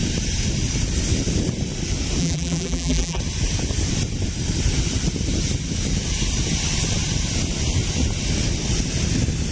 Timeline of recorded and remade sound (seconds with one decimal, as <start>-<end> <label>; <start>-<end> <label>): 0.0-2.2 recorded; 2.2-3.2 remade; 3.2-9.5 recorded